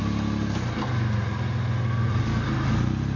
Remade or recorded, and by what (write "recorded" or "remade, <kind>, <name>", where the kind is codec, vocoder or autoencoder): recorded